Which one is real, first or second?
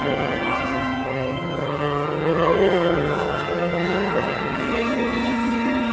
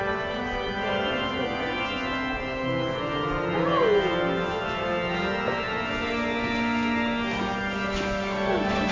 second